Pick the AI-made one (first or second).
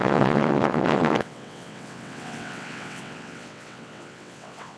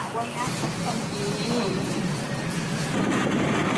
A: first